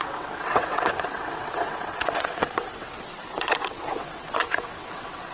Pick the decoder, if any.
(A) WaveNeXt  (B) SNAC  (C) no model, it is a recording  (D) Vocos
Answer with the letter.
A